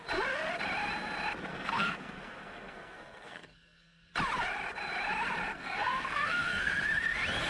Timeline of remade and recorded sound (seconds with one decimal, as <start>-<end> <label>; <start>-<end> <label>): 0.0-1.5 recorded; 1.5-4.1 remade; 4.1-5.5 recorded; 5.5-6.7 remade; 6.7-7.5 recorded

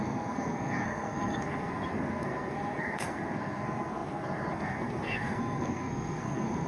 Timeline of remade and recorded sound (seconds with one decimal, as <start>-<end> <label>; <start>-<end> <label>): 0.0-6.7 remade

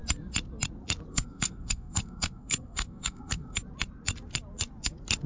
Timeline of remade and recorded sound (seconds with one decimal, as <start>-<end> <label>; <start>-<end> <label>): 0.0-1.1 recorded; 1.1-3.6 remade; 3.6-5.3 recorded

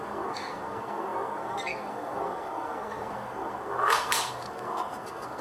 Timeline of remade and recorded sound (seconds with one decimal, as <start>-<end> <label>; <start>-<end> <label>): 0.0-5.4 remade

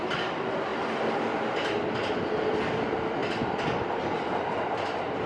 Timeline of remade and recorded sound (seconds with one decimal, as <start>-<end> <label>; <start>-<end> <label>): 0.0-5.3 recorded

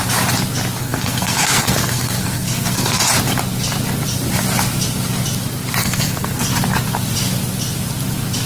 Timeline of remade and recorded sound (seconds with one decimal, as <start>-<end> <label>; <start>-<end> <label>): 0.0-0.8 recorded; 0.8-3.0 remade; 3.0-5.8 recorded; 5.8-6.5 remade; 6.5-8.5 recorded

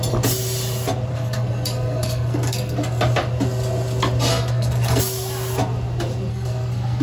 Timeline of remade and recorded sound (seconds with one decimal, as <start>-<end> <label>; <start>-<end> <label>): 0.0-1.1 recorded; 1.1-3.0 remade; 3.0-4.3 recorded; 4.3-5.0 remade; 5.0-6.3 recorded; 6.3-7.0 remade